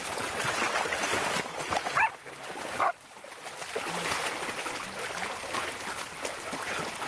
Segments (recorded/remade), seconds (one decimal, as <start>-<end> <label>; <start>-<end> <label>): 0.0-1.0 remade; 1.0-7.1 recorded

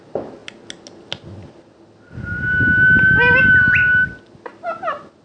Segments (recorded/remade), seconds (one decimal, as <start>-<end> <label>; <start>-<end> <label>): 0.0-5.2 recorded

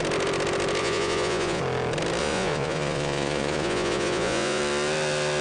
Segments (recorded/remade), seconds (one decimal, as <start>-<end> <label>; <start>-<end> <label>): 0.0-0.8 recorded; 0.8-1.6 remade; 1.6-2.2 recorded; 2.2-4.6 remade; 4.6-5.4 recorded

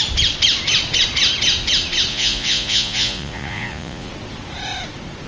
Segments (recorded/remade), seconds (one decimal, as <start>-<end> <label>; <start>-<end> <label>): 0.0-2.1 recorded; 2.1-4.1 remade; 4.1-5.3 recorded